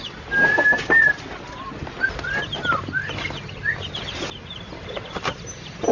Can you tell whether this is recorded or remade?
recorded